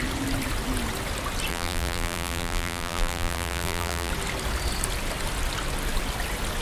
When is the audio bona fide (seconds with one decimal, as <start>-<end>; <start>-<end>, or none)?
0.0-1.5; 4.1-6.6